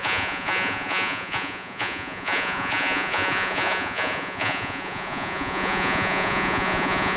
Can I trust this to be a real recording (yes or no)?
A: no